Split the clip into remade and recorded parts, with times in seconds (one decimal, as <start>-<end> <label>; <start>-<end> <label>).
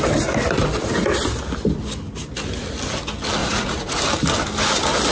0.0-3.4 recorded; 3.4-4.0 remade; 4.0-5.1 recorded